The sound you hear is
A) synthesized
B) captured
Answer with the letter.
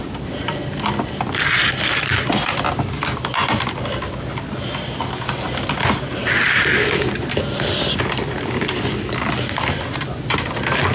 B